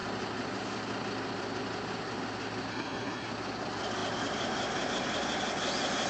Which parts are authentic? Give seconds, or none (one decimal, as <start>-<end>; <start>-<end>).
0.0-2.7; 3.3-6.1